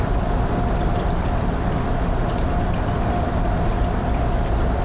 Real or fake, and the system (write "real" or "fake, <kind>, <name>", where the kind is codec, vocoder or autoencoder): real